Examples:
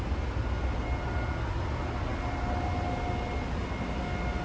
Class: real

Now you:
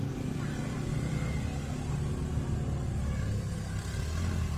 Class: real